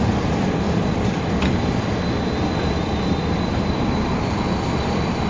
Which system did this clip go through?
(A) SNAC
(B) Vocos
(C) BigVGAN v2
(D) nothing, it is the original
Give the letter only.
C